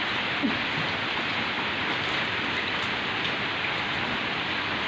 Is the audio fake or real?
real